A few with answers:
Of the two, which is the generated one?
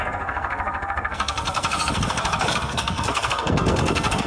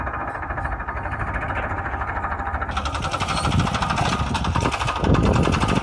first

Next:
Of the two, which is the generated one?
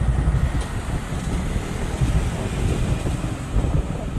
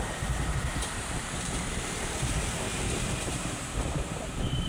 second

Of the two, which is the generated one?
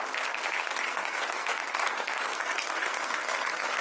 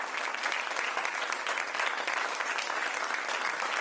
first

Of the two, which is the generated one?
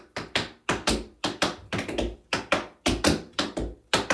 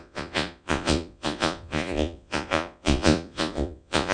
second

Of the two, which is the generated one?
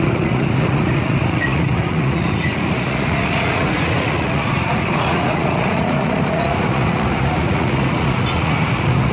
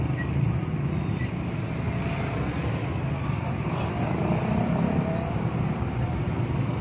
first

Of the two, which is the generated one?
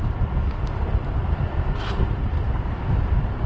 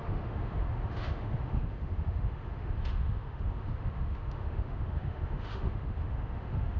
second